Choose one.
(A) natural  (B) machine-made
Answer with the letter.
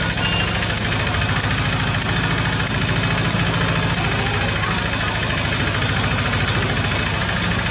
A